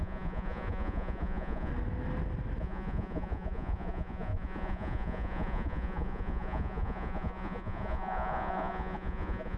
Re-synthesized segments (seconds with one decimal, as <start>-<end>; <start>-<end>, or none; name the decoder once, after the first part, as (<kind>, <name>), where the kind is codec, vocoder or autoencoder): 0.0-1.7 (vocoder, Vocos); 2.6-9.6

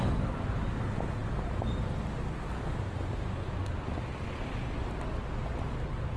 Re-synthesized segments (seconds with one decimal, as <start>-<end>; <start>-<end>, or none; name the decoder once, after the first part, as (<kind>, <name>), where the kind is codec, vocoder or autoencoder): none

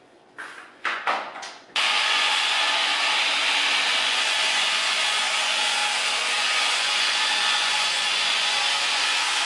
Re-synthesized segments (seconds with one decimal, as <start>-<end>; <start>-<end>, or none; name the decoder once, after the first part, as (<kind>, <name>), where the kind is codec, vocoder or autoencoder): 0.0-2.9 (vocoder, Vocos); 4.0-5.8; 6.4-9.4

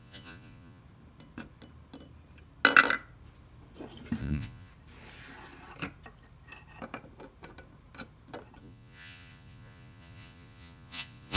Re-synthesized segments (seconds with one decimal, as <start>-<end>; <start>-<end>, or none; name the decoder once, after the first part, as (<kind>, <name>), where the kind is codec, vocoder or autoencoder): 0.0-0.8 (vocoder, Vocos); 4.2-4.7; 8.6-11.4

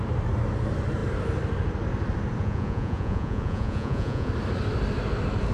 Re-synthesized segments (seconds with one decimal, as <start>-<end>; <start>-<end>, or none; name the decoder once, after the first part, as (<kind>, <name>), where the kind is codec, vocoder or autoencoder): 2.4-4.3 (vocoder, Vocos)

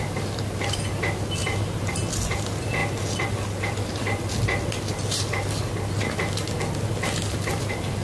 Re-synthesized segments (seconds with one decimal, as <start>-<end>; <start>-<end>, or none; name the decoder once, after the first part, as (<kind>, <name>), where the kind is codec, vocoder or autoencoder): none

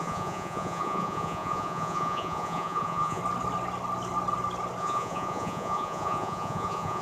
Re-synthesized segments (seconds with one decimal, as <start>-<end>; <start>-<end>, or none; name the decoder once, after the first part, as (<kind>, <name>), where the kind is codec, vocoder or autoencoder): 0.0-3.2 (vocoder, Vocos); 4.8-7.0

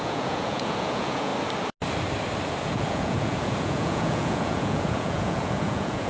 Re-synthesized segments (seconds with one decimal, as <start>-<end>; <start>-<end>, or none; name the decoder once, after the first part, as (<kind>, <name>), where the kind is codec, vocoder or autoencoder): 0.0-1.3 (vocoder, Vocos); 2.6-6.1